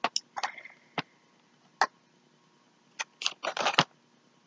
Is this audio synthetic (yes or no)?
no